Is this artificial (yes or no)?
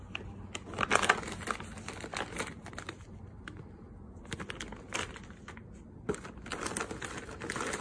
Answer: no